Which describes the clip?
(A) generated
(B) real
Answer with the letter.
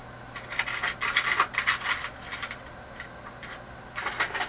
B